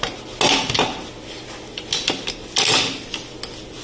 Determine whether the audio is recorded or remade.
recorded